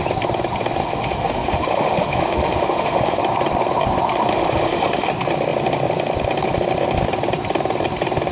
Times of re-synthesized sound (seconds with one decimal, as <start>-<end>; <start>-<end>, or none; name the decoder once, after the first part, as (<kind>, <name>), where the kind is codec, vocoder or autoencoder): 0.8-3.2 (autoencoder, DAC-VAE); 4.3-5.1